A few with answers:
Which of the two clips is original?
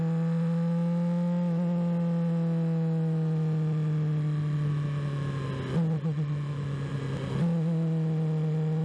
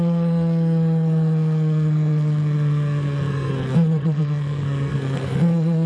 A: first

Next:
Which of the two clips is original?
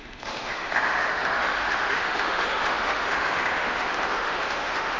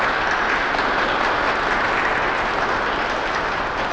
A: second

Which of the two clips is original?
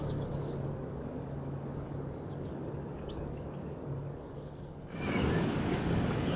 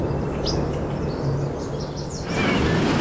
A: second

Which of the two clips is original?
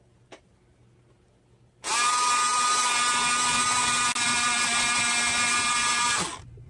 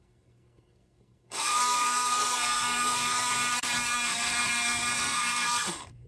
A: first